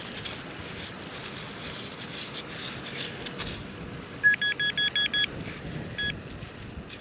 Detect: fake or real real